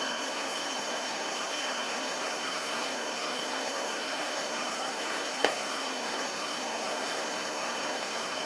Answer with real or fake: fake